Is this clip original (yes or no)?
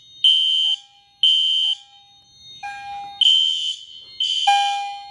yes